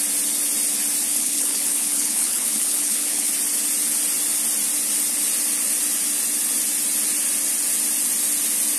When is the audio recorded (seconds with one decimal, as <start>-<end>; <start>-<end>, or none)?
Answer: 0.0-1.1; 3.3-8.8